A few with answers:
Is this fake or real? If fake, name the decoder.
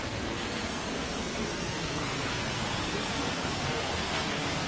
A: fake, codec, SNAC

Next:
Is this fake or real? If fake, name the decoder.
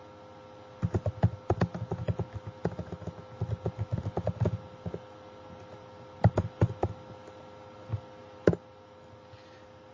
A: real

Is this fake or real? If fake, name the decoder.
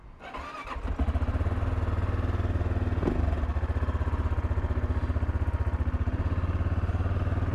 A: real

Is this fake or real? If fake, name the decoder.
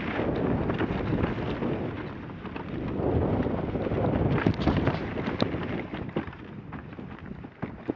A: real